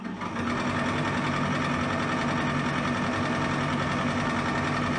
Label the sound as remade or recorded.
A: recorded